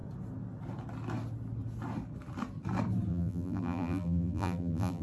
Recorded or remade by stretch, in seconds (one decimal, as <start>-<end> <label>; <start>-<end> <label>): 0.0-3.1 recorded; 3.1-5.0 remade